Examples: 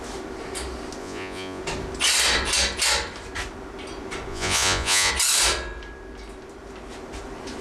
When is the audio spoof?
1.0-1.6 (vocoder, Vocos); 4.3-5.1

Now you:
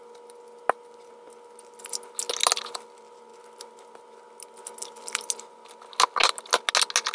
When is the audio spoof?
none

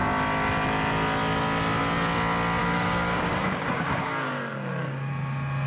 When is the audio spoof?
2.6-5.1 (codec, DAC)

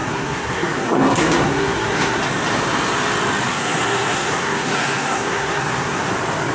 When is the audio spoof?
0.0-2.2 (codec, SNAC); 3.5-6.1